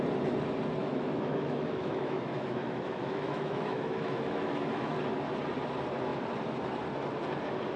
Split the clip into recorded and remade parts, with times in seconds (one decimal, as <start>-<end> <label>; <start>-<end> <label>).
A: 0.0-0.8 recorded; 0.8-5.0 remade; 5.0-7.8 recorded